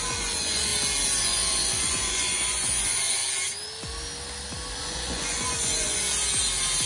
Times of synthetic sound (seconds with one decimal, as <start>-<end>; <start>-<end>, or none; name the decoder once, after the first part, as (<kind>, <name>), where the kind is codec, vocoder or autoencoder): 0.0-0.7 (vocoder, Vocos); 1.2-3.2; 4.8-6.0